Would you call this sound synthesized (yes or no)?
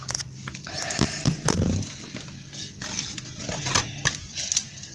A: no